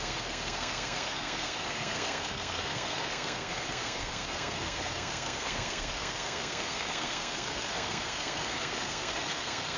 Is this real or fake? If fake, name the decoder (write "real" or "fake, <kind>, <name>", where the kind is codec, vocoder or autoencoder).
fake, codec, SNAC